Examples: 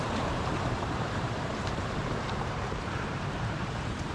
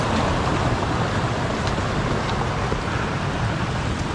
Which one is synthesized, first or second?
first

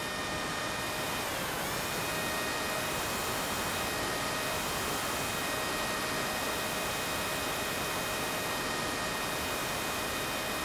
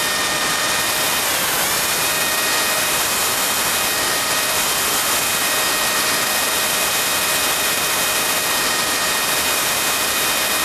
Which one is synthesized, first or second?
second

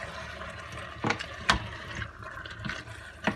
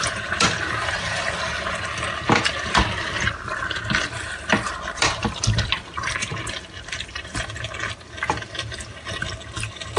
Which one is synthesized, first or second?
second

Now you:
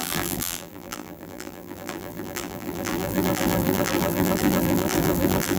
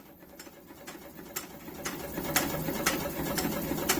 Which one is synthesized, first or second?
first